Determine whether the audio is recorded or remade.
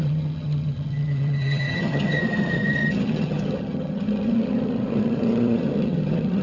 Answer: remade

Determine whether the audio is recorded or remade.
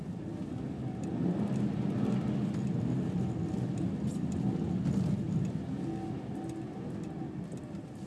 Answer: recorded